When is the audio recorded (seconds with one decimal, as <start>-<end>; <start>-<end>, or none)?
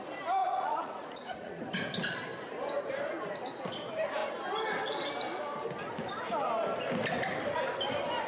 0.0-0.4; 1.6-8.3